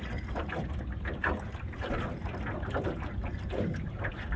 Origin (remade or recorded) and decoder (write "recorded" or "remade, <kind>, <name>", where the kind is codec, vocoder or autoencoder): recorded